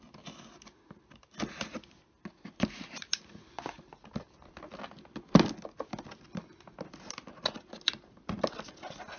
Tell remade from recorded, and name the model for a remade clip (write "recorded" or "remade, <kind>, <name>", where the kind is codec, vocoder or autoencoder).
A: recorded